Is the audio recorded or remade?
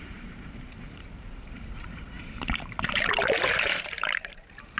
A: remade